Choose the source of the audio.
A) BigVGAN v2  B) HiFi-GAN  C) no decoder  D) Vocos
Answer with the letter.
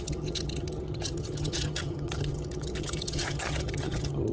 B